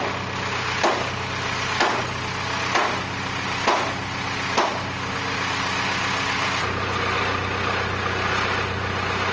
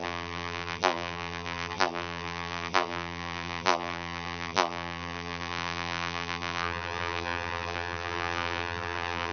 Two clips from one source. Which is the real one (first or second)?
first